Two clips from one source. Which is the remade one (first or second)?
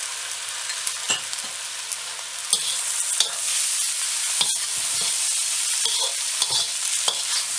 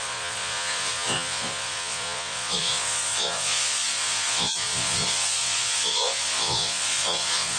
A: second